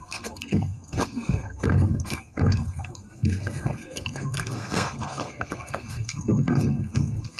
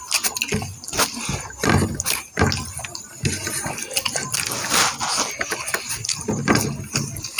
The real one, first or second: second